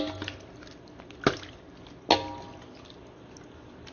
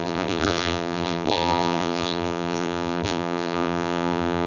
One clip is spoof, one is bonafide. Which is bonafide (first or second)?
first